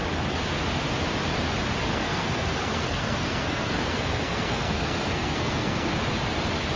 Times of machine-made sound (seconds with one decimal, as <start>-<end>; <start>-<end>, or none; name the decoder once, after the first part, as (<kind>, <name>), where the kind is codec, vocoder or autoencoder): 1.8-5.9 (codec, SNAC)